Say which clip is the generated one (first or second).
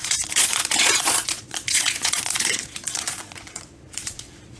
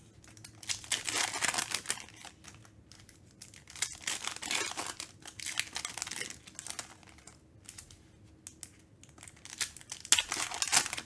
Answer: first